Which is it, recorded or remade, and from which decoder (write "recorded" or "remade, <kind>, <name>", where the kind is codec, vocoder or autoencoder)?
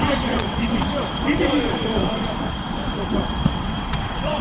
remade, vocoder, WaveNeXt